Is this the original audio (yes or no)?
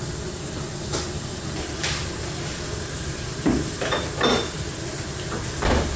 yes